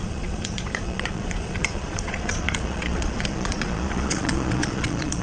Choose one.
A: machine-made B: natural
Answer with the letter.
A